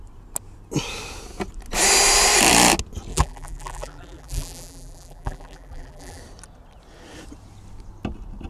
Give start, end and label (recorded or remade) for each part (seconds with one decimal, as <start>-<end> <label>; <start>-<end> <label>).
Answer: 0.0-3.1 recorded; 3.1-6.2 remade; 6.2-8.5 recorded

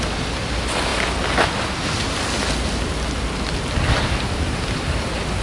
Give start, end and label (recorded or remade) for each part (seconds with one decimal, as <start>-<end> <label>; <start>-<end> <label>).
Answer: 0.0-5.4 recorded

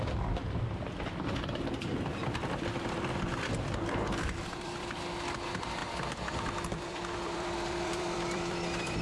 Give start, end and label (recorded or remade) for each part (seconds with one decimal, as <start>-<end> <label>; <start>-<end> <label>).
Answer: 0.0-5.8 remade; 5.8-6.7 recorded; 6.7-9.0 remade

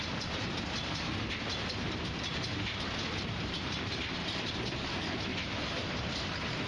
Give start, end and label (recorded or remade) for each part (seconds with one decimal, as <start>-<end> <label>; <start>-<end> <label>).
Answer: 0.0-0.4 recorded; 0.4-1.1 remade; 1.1-2.3 recorded; 2.3-4.4 remade; 4.4-5.3 recorded; 5.3-6.3 remade; 6.3-6.7 recorded